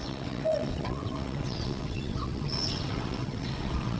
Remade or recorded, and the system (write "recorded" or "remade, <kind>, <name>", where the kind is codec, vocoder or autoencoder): remade, vocoder, WaveNeXt